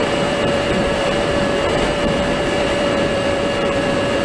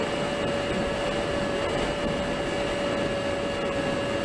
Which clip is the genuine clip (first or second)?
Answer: second